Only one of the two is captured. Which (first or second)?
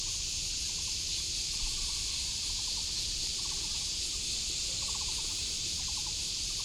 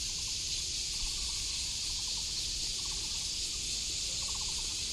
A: second